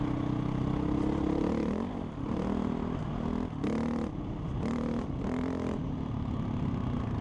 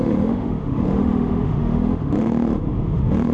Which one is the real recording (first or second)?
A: first